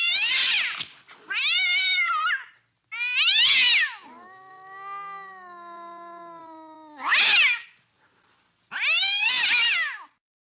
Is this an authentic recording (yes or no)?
yes